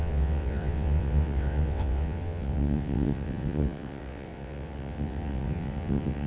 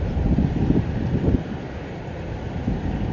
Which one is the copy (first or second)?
first